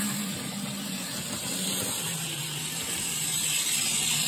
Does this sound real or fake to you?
real